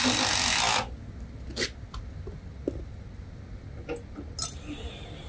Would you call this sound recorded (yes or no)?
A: yes